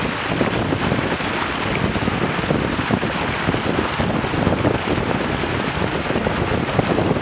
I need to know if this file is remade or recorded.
recorded